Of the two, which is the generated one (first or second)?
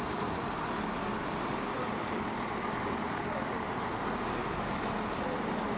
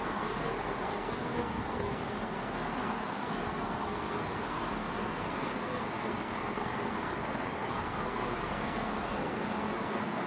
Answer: second